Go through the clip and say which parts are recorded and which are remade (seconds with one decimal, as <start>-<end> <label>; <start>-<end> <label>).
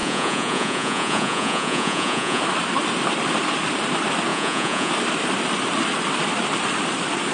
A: 0.0-2.4 remade; 2.4-4.3 recorded; 4.3-4.9 remade; 4.9-7.3 recorded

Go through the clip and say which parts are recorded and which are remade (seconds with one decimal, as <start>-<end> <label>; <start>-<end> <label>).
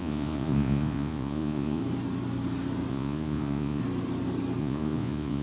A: 0.0-1.8 remade; 1.8-2.9 recorded; 2.9-3.8 remade; 3.8-4.6 recorded; 4.6-5.4 remade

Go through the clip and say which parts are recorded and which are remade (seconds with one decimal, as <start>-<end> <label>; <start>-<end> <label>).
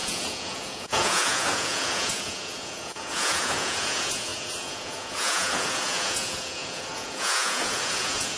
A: 0.0-8.4 remade